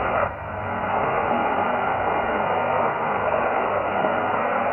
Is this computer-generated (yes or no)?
yes